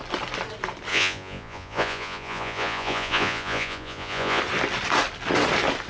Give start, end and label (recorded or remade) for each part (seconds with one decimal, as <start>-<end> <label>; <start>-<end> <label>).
0.0-0.9 recorded; 0.9-4.4 remade; 4.4-5.9 recorded